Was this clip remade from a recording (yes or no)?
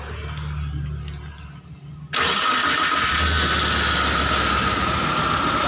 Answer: no